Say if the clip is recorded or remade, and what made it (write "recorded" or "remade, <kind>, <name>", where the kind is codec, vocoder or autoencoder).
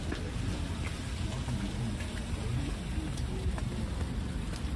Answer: recorded